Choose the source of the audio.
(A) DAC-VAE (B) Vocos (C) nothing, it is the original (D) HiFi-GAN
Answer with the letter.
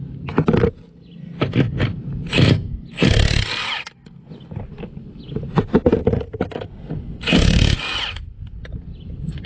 C